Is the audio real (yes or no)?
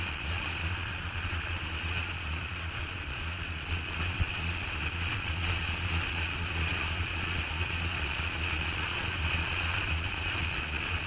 no